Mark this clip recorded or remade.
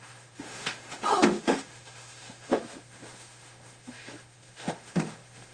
remade